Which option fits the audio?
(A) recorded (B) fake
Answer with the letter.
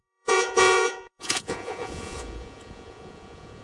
B